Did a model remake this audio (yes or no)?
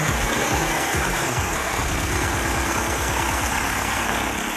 yes